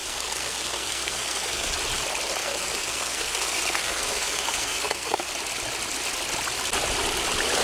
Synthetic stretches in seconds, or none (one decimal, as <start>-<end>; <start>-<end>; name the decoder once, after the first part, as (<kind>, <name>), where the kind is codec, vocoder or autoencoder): 0.0-1.7 (codec, SNAC); 2.4-5.3